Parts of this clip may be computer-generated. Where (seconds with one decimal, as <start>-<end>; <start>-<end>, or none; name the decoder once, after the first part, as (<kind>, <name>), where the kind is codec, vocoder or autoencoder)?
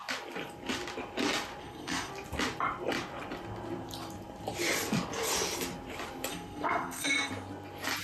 1.6-2.1 (codec, SNAC); 6.3-7.3